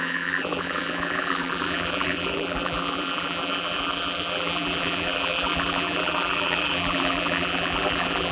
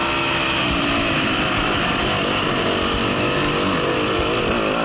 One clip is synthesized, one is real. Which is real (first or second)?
second